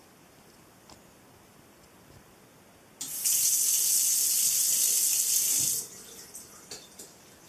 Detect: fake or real real